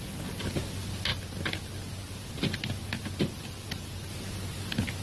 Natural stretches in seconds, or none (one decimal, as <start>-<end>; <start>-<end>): 0.0-5.0